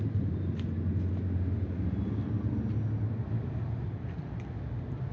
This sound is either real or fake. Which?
real